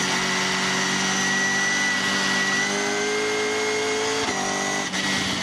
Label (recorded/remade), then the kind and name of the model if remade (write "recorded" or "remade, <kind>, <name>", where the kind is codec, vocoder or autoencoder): recorded